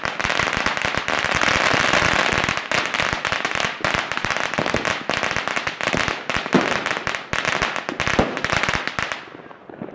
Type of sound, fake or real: real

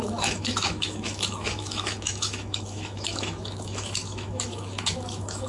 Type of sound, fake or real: fake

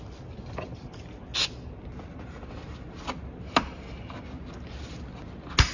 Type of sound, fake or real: real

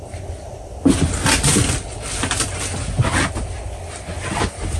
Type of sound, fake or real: real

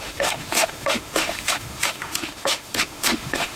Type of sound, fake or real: fake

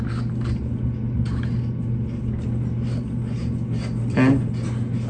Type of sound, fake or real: real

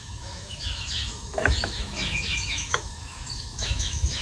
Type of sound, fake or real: fake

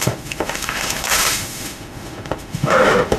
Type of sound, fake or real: fake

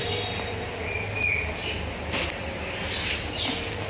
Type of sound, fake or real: real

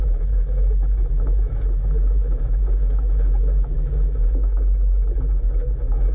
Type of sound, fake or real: fake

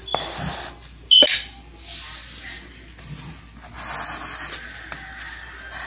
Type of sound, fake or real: real